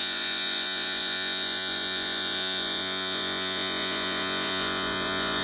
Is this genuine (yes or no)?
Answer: no